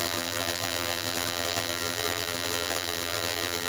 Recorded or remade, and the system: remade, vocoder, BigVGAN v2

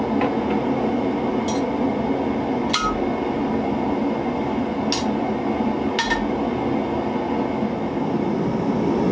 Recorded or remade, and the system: recorded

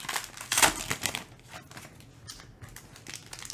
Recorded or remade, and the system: recorded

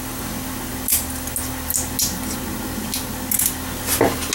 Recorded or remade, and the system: recorded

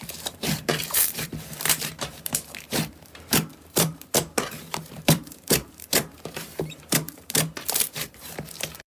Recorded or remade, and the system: remade, vocoder, BigVGAN v2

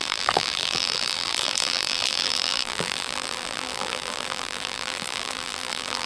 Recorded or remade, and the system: remade, vocoder, BigVGAN v2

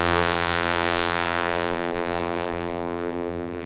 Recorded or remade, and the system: remade, vocoder, BigVGAN v2